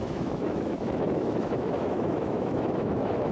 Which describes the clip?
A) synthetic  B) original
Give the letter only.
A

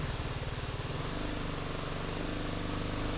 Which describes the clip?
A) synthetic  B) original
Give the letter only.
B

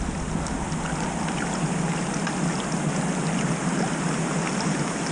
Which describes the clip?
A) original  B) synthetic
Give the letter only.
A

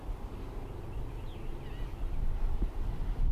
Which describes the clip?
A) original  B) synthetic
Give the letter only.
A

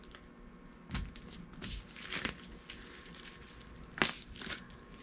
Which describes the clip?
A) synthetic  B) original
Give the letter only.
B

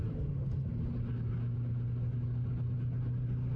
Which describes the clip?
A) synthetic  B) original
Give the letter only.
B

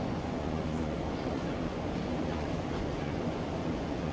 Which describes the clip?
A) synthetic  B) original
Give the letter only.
A